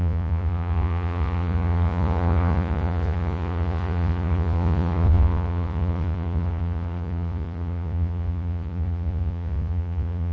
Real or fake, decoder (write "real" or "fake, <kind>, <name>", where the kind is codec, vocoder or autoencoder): fake, vocoder, Vocos